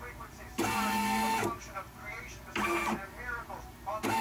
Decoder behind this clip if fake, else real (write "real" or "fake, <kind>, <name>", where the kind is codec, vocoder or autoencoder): real